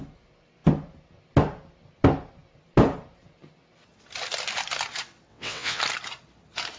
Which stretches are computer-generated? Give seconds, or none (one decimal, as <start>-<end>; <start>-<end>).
5.3-5.8